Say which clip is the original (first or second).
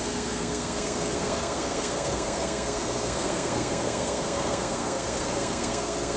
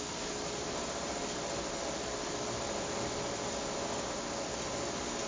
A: second